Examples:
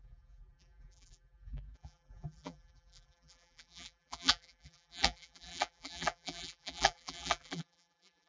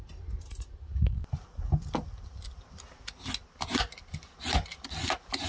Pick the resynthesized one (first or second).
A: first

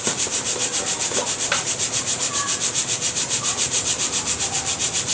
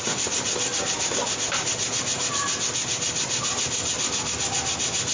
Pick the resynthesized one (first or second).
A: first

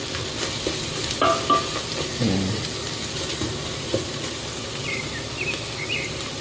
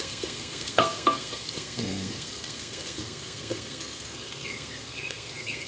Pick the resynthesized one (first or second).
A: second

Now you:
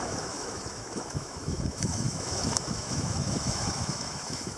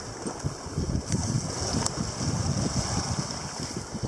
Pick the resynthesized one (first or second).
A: first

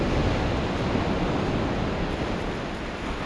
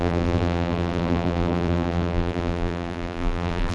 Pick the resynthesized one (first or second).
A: second